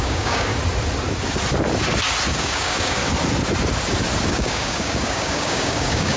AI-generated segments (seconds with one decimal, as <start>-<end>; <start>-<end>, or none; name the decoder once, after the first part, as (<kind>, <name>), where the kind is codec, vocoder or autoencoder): 0.0-0.5 (codec, DAC); 2.3-3.0; 4.3-6.2